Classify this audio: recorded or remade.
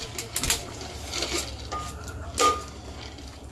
recorded